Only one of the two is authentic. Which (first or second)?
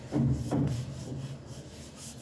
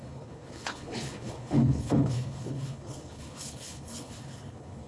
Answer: first